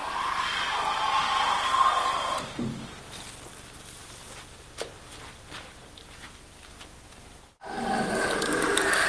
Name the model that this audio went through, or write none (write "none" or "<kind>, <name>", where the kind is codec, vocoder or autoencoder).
none